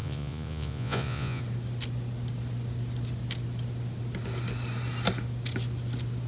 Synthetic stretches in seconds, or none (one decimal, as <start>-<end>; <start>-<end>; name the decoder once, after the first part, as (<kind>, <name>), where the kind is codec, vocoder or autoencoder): 0.0-1.4 (vocoder, Vocos)